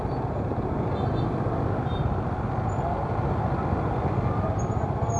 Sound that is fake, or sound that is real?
real